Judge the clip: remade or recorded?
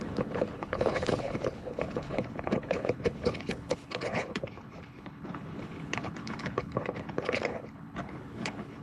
remade